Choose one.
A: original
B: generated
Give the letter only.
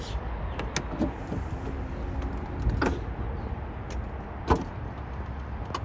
A